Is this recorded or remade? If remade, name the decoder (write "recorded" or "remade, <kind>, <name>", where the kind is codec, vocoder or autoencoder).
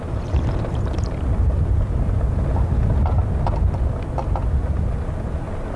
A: recorded